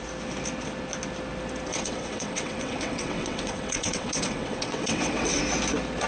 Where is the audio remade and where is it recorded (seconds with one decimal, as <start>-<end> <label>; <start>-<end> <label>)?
0.0-1.7 recorded; 1.7-5.4 remade; 5.4-6.1 recorded

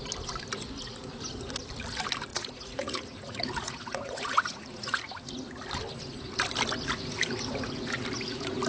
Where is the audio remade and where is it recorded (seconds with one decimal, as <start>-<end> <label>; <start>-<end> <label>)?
0.0-2.3 recorded; 2.3-5.1 remade; 5.1-8.7 recorded

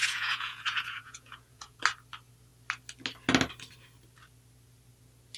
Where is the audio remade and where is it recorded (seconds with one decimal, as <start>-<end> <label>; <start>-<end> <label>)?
0.0-1.8 remade; 1.8-5.4 recorded

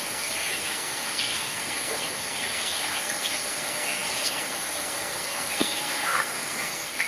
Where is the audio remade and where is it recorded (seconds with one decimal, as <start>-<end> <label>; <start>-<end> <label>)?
0.0-7.1 remade

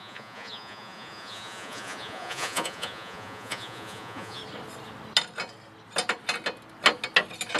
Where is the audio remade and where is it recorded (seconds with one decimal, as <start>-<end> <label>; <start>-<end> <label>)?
0.0-4.4 remade; 4.4-7.6 recorded

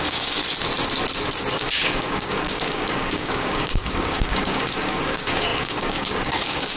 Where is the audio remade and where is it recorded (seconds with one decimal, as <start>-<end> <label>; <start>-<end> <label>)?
0.0-0.4 remade; 0.4-1.6 recorded; 1.6-6.8 remade

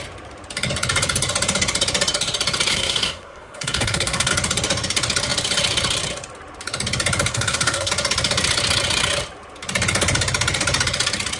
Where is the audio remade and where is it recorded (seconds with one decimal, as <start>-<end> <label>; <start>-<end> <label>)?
0.0-2.7 recorded; 2.7-4.3 remade; 4.3-7.3 recorded; 7.3-7.9 remade; 7.9-11.4 recorded